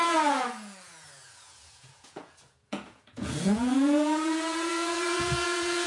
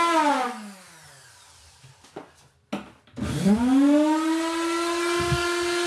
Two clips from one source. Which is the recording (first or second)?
second